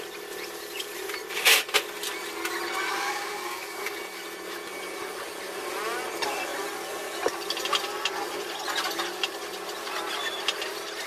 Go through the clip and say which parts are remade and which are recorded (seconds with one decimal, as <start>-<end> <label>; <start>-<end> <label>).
0.0-2.9 recorded; 2.9-4.0 remade; 4.0-11.1 recorded